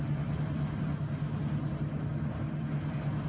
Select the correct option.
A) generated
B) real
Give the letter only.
B